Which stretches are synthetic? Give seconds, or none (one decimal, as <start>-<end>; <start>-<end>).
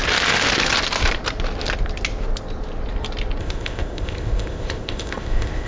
3.4-5.7